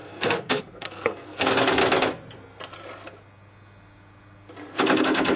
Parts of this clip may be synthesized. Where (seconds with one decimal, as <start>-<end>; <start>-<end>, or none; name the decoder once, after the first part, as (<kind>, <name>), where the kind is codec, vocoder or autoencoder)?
0.0-1.8 (codec, SNAC); 5.0-5.4